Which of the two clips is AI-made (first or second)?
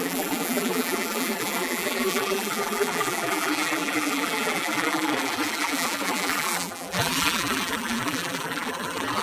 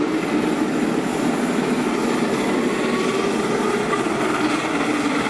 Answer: first